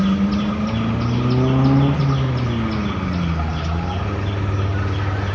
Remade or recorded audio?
recorded